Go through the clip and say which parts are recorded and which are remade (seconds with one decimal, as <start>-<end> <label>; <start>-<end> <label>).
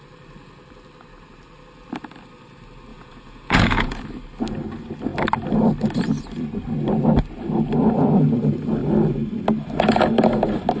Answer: 0.0-2.9 recorded; 2.9-4.0 remade; 4.0-10.8 recorded